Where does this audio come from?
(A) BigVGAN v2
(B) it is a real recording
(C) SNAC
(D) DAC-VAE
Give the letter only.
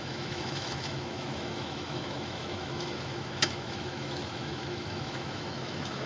D